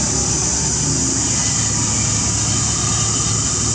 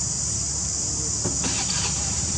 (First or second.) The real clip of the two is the first